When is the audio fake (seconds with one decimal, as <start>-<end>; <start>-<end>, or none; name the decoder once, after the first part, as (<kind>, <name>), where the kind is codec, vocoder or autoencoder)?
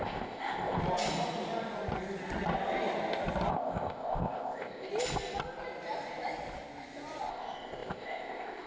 0.0-0.8 (codec, ZipCodec); 3.5-4.9; 7.3-8.7